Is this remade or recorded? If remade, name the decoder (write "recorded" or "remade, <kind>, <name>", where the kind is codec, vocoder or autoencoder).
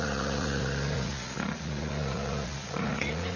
remade, vocoder, Vocos